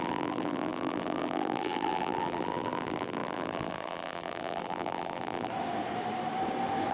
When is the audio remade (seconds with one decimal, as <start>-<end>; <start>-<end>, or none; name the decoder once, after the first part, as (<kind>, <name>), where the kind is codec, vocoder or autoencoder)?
0.0-5.5 (vocoder, BigVGAN v2)